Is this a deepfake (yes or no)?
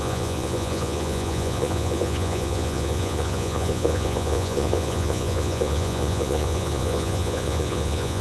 yes